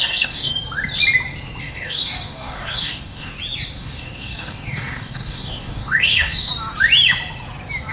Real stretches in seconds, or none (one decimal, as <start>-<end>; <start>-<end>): 0.5-1.6; 3.3-3.8; 6.5-7.9